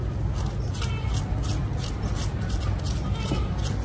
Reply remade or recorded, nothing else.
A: recorded